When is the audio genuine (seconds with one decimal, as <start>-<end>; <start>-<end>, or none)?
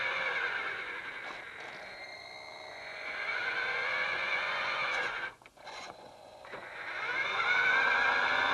1.0-2.7